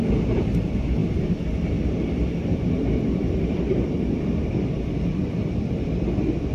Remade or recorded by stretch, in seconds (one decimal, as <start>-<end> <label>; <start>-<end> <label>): 0.0-6.5 remade